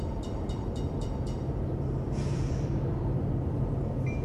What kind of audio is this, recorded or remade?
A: remade